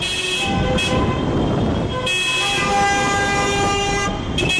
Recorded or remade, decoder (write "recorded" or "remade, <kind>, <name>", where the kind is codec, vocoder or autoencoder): recorded